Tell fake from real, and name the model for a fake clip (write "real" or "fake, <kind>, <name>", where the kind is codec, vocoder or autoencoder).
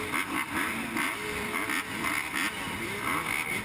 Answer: real